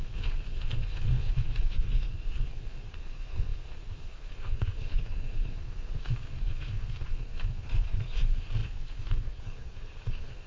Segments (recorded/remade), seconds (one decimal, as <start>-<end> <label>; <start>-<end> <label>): 0.0-10.5 remade

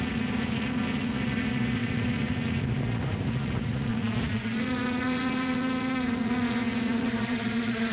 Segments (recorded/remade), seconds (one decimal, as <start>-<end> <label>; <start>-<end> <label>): 0.0-7.9 remade